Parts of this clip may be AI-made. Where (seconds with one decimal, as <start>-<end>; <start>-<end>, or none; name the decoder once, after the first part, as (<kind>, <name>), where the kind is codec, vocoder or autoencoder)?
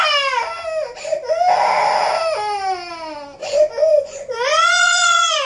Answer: 3.4-5.5 (vocoder, Vocos)